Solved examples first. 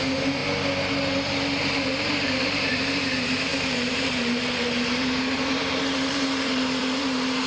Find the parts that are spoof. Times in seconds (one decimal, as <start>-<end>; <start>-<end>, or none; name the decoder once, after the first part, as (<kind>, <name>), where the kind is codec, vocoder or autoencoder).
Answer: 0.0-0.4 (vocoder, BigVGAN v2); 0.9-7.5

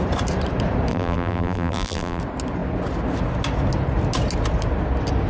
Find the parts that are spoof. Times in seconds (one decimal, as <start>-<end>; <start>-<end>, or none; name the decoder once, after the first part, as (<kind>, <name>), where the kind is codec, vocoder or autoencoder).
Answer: 0.9-2.2 (vocoder, BigVGAN v2)

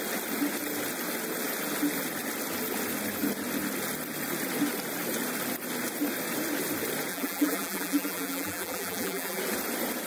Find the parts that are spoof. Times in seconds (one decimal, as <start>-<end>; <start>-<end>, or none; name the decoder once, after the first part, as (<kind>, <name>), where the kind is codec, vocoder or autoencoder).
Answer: 7.1-9.4 (vocoder, BigVGAN v2)

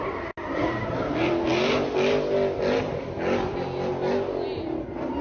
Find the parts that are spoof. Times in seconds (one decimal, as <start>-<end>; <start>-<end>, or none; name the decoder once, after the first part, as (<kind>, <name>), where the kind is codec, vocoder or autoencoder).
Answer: none

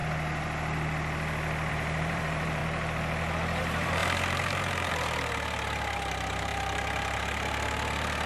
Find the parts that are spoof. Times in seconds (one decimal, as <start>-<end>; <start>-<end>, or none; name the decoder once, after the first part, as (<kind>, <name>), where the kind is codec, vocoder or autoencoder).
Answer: 1.7-2.6 (vocoder, BigVGAN v2); 3.6-8.3